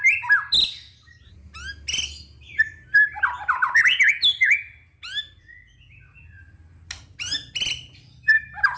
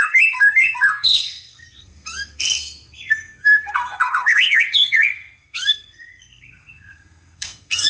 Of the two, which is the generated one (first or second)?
second